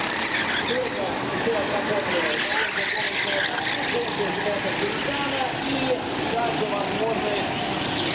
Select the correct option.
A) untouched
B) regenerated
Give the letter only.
A